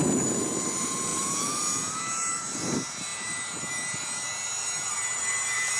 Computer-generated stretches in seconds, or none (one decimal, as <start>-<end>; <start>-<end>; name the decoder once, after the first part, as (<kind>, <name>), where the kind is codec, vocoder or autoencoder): 0.0-5.8 (vocoder, BigVGAN v2)